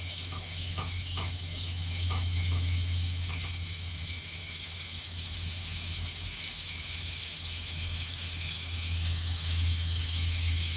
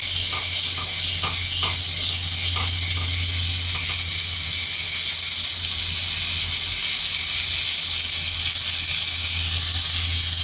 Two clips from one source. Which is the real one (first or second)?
second